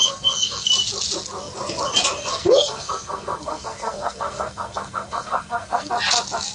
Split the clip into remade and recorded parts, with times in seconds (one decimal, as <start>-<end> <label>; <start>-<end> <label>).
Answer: 0.0-0.7 remade; 0.7-2.3 recorded; 2.3-5.9 remade; 5.9-6.5 recorded